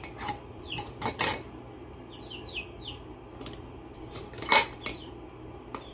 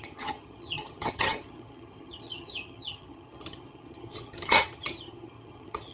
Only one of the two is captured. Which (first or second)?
first